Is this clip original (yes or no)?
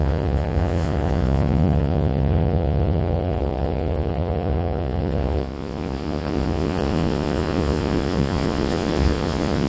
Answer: no